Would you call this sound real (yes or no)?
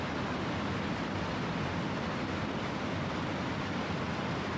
yes